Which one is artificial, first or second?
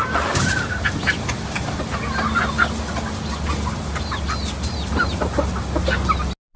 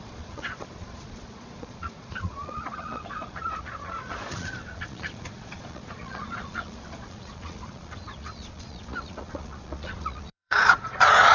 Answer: second